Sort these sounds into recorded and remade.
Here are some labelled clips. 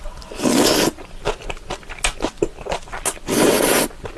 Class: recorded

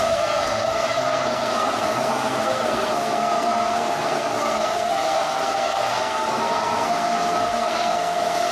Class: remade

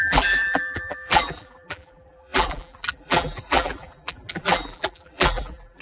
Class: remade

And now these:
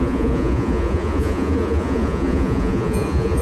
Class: remade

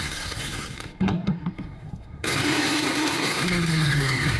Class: remade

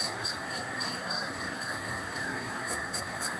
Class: remade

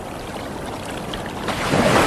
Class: recorded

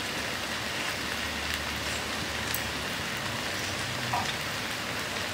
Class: recorded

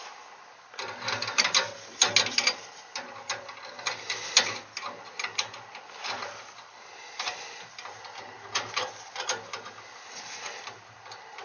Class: recorded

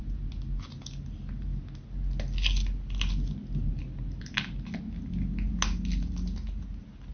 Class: recorded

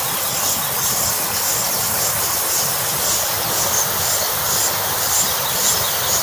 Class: recorded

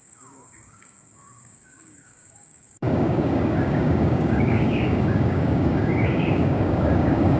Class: remade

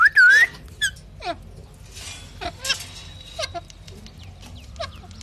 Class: recorded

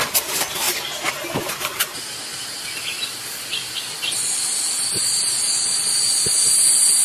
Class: recorded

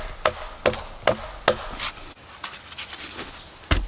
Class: recorded